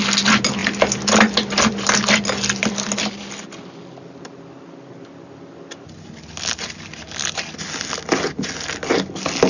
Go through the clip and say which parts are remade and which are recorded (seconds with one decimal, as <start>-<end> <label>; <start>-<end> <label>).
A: 0.0-9.5 recorded